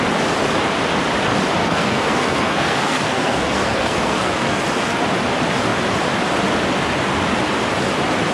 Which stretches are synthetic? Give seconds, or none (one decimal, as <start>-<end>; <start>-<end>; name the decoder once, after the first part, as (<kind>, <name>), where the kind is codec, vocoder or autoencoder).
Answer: 1.6-4.6 (codec, SNAC)